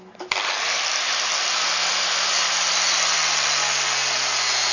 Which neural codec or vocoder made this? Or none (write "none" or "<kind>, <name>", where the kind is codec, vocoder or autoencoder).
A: none